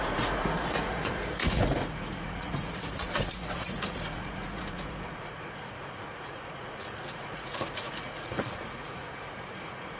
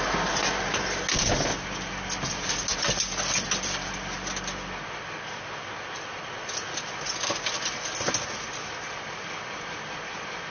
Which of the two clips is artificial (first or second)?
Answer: first